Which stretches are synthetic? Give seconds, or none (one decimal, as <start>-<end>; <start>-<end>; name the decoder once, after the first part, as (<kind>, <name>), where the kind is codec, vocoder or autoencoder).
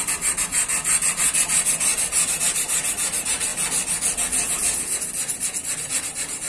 0.0-0.7 (vocoder, BigVGAN v2); 1.2-1.9; 2.4-3.5; 5.6-6.5